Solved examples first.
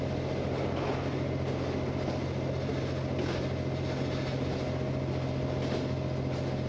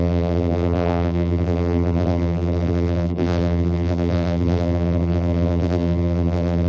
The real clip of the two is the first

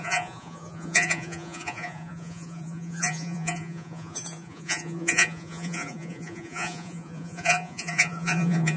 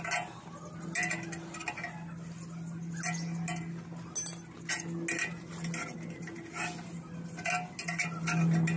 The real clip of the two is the second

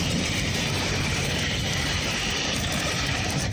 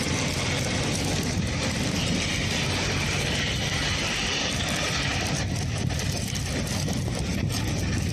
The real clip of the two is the second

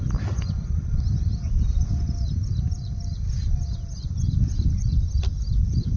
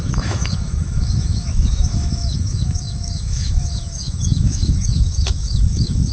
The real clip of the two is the first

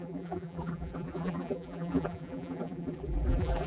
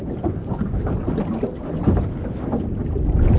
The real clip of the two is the second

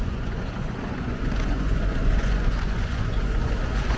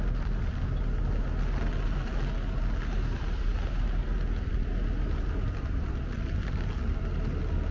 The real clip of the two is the second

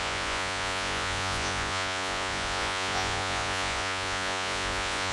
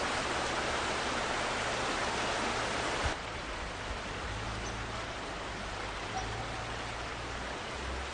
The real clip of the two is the second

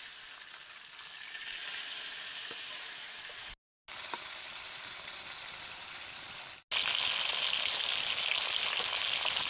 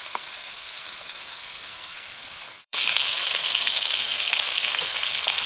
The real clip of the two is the first